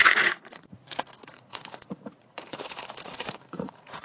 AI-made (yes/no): yes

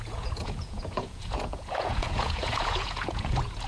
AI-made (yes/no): yes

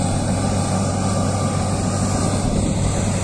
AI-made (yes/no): no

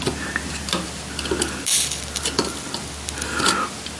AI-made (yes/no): no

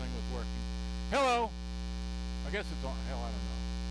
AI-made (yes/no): no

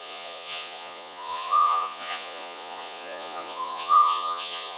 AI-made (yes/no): yes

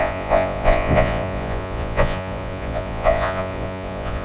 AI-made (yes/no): yes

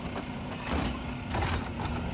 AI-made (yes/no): no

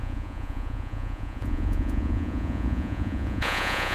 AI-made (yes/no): yes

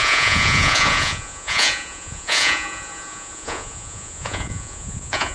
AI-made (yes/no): yes